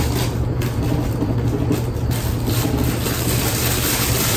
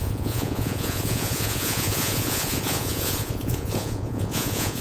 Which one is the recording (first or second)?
first